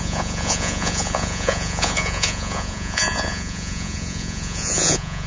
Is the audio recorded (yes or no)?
no